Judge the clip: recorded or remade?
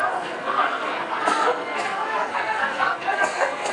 remade